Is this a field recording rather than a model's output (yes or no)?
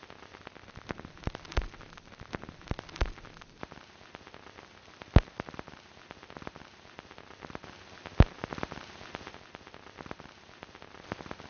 yes